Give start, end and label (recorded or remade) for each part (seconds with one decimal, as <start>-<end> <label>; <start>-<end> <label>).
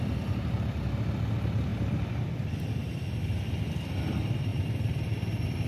0.0-1.7 recorded; 1.7-2.6 remade; 2.6-4.5 recorded; 4.5-5.7 remade